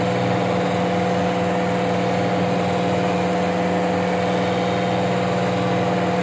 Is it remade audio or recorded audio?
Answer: recorded